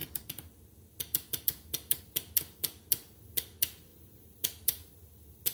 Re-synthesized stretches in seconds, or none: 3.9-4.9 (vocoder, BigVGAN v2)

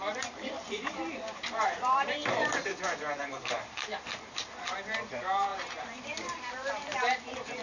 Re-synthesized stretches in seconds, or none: 0.0-2.7 (vocoder, BigVGAN v2); 3.2-7.6

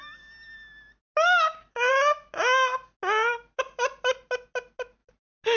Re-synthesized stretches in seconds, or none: none